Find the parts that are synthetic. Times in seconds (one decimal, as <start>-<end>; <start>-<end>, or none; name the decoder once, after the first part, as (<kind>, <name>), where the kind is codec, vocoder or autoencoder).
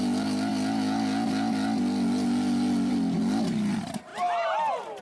none